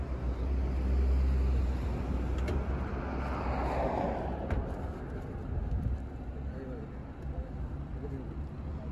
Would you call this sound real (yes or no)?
yes